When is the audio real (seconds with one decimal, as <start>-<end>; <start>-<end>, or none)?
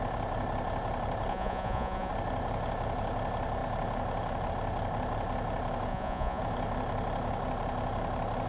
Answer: 0.0-1.3; 2.1-5.9; 6.4-8.5